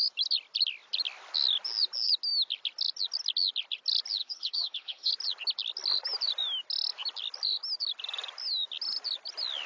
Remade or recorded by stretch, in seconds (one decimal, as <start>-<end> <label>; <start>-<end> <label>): 0.0-4.2 recorded; 4.2-5.1 remade; 5.1-9.7 recorded